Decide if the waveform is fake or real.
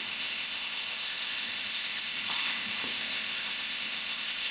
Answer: fake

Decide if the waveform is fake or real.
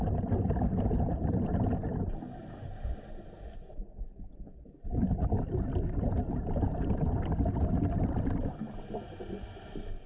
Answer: real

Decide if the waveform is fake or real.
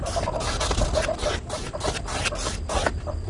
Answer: fake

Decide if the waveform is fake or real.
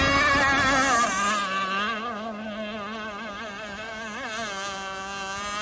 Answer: real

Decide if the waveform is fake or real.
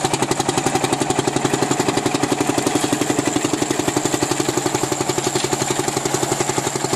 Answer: real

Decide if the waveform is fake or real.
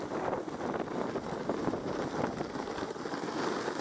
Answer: real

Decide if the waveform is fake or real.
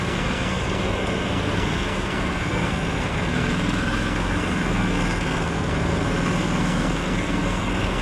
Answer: fake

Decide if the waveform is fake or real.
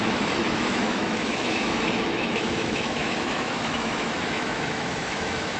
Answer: fake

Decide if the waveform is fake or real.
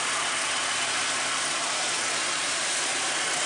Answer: real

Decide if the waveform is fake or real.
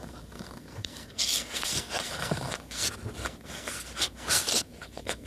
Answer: fake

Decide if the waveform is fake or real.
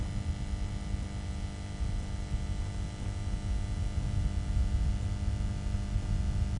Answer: real